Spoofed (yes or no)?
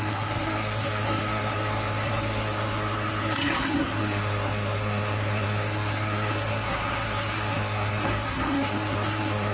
yes